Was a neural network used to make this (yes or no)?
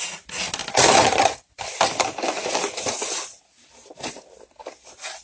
no